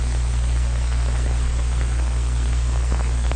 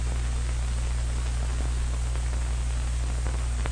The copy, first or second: first